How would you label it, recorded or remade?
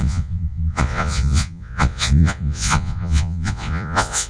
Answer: remade